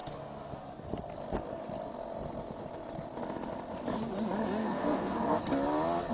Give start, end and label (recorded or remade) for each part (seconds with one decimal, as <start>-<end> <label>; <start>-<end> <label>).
0.0-4.6 recorded; 4.6-5.4 remade; 5.4-6.1 recorded